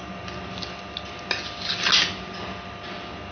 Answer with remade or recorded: recorded